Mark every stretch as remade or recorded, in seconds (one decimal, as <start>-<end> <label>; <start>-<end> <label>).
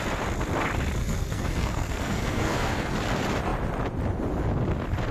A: 0.0-1.0 recorded; 1.0-2.9 remade; 2.9-5.1 recorded